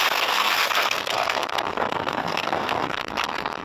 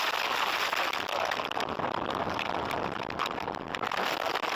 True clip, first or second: second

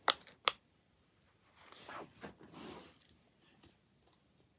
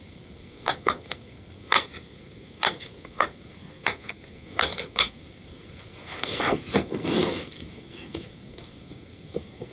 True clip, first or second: first